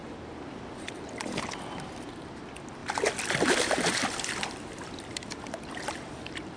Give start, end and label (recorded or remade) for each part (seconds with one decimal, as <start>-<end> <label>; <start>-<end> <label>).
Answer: 0.0-1.6 recorded; 1.6-2.8 remade; 2.8-3.3 recorded; 3.3-6.6 remade